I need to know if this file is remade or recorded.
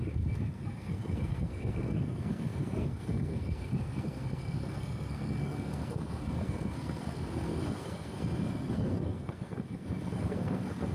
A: remade